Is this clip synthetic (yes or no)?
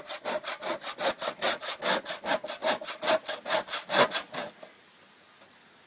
no